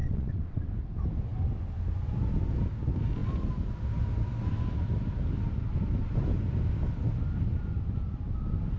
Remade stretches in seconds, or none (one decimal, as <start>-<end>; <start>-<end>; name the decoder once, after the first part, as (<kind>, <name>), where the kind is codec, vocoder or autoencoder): 0.0-0.7 (vocoder, WaveNeXt)